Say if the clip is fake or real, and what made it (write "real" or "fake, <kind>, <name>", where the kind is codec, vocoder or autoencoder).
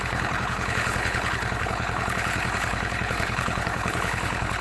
fake, codec, HILCodec